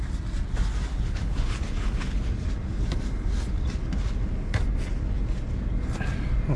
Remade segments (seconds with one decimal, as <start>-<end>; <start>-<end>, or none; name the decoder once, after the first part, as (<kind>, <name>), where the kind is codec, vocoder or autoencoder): 0.9-2.2 (codec, HILCodec)